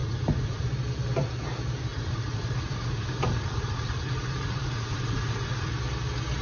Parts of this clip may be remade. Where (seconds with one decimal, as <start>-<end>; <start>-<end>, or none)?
0.0-0.6; 1.9-5.7